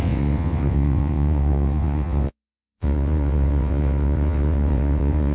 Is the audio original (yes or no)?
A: no